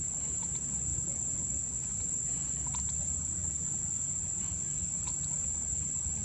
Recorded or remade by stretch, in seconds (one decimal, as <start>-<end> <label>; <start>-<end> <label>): 0.0-6.2 recorded